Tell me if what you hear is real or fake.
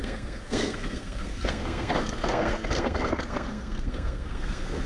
fake